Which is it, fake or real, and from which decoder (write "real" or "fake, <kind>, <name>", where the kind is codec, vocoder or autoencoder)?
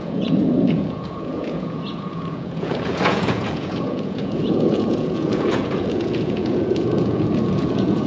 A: fake, vocoder, Vocos